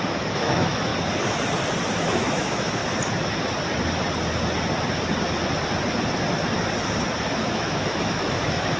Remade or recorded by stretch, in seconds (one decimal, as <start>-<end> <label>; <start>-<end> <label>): 0.0-0.9 remade; 0.9-2.0 recorded; 2.0-2.8 remade; 2.8-7.2 recorded; 7.2-8.8 remade